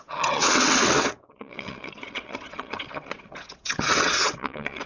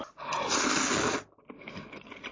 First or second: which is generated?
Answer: first